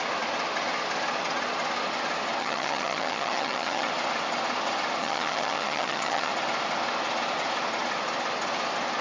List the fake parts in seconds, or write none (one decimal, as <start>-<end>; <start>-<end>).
2.4-3.9; 5.0-6.3